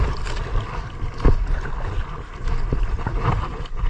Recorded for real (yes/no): yes